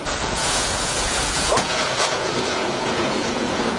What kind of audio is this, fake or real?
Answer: fake